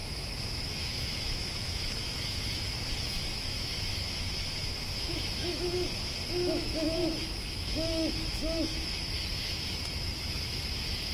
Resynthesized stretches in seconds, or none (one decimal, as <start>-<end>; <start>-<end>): 0.0-11.1